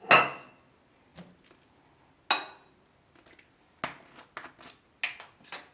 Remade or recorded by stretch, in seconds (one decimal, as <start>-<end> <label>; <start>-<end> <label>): 0.0-5.7 recorded